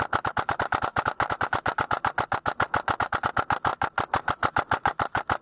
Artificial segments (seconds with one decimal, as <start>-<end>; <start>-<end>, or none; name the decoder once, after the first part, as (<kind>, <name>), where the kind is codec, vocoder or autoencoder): none